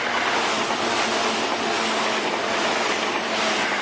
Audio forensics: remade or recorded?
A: recorded